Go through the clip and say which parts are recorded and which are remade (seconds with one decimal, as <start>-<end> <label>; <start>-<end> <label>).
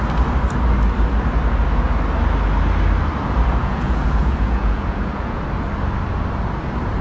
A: 0.0-3.6 recorded; 3.6-5.4 remade; 5.4-7.0 recorded